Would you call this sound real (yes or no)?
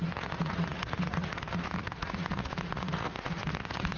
no